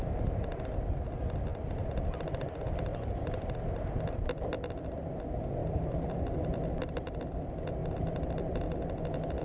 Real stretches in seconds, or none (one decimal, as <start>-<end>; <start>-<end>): 0.0-2.9; 3.6-5.6; 6.2-9.4

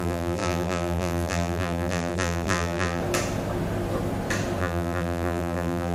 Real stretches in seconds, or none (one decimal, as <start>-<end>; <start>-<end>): 3.0-4.6

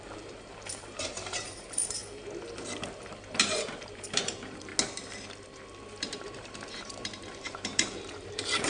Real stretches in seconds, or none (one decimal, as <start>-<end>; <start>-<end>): 2.0-3.4; 4.7-6.0

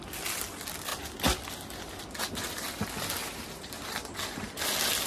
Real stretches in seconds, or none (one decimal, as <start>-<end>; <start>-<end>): 0.0-3.2; 4.6-5.1